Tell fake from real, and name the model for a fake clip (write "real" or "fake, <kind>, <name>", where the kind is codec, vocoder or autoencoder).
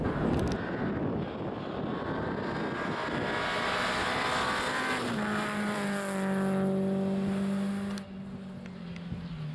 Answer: real